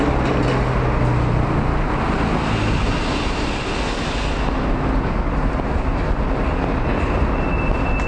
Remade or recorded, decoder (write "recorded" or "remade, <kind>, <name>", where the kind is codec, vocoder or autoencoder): recorded